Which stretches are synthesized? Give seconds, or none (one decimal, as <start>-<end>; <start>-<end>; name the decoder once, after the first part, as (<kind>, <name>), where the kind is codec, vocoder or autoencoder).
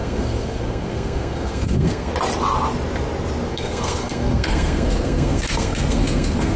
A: 0.0-2.1 (codec, SNAC); 3.5-6.6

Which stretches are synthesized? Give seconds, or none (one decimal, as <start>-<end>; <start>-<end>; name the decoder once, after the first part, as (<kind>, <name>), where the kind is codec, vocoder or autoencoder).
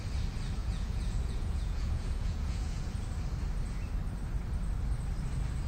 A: 0.6-2.9 (vocoder, Vocos)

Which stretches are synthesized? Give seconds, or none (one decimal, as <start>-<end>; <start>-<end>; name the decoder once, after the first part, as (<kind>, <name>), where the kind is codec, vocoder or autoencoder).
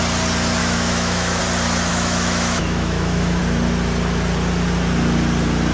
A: 0.6-1.4 (autoencoder, DAC-VAE); 1.9-3.4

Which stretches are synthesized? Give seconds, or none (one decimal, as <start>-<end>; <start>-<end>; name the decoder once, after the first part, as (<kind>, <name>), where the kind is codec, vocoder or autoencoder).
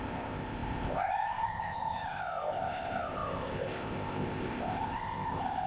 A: 0.0-5.7 (codec, ZipCodec)